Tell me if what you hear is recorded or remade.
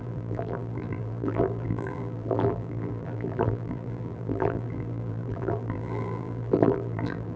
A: remade